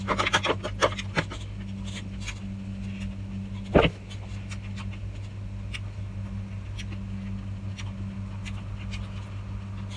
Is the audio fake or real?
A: real